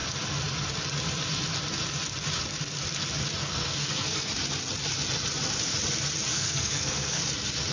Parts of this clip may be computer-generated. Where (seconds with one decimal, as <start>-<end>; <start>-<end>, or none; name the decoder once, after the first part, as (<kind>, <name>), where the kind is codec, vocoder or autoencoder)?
3.4-4.3 (codec, SNAC); 6.3-7.2